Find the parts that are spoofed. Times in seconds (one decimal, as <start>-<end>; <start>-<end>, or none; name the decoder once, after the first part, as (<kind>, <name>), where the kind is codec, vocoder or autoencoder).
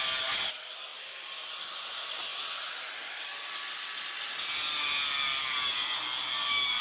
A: none